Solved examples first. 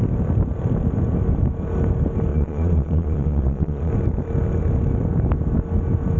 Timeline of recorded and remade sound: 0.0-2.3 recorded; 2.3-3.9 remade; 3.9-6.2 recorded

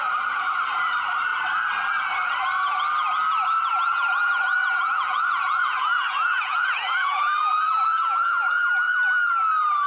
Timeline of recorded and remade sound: 0.0-3.7 recorded; 3.7-8.7 remade; 8.7-9.9 recorded

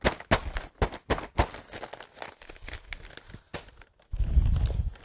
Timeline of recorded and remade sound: 0.0-5.0 recorded